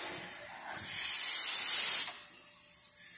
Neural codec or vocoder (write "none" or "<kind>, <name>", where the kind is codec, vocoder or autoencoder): none